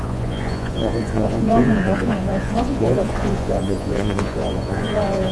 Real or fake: fake